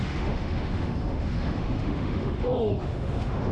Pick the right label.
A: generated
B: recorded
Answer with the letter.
A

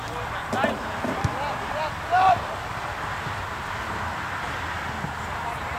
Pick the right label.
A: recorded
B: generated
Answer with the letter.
A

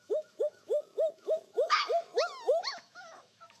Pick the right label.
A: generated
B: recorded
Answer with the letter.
A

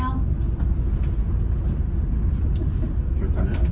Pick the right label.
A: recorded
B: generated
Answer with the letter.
A